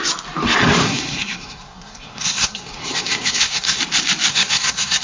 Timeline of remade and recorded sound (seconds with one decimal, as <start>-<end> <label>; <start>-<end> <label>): 0.0-0.8 recorded; 0.8-3.8 remade; 3.8-4.3 recorded; 4.3-5.0 remade

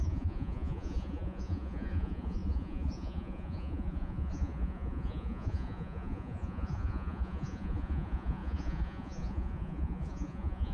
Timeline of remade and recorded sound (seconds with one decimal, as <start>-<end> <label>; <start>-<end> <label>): 0.0-10.7 remade

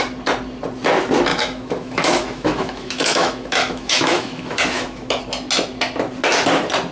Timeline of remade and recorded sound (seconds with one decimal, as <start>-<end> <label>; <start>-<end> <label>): 0.0-1.3 recorded; 1.3-5.2 remade; 5.2-6.9 recorded

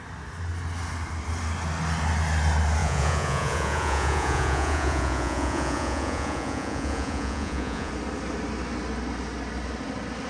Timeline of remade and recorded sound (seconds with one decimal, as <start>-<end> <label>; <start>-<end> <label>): 0.0-2.8 recorded; 2.8-7.9 remade; 7.9-10.3 recorded

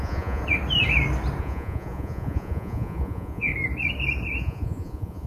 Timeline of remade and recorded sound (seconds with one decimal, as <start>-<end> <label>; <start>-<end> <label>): 0.0-0.4 remade; 0.4-1.4 recorded; 1.4-3.5 remade; 3.5-4.4 recorded; 4.4-5.3 remade

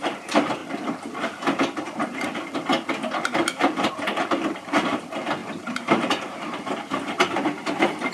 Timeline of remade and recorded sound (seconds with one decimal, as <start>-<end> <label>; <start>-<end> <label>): 0.0-0.6 remade; 0.6-3.9 recorded; 3.9-8.1 remade